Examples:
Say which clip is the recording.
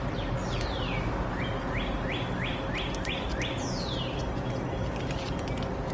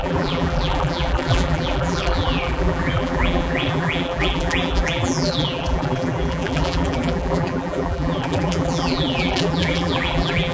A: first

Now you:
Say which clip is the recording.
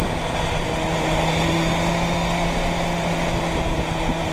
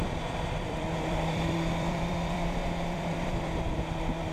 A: first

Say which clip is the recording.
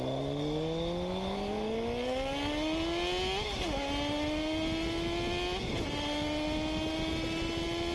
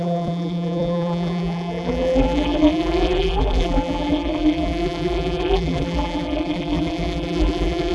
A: first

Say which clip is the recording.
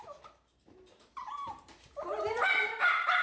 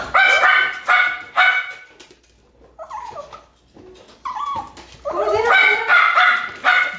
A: second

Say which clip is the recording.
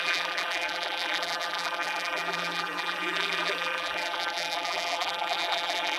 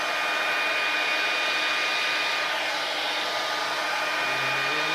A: second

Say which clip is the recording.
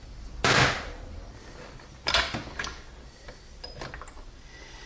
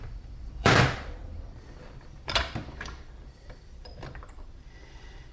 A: first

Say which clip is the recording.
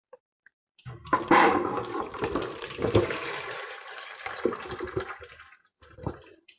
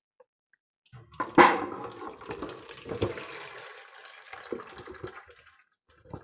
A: second